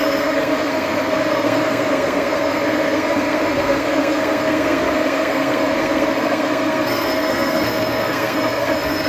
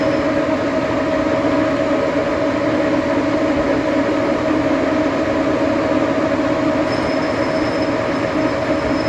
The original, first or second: second